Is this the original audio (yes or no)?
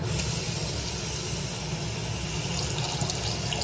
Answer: yes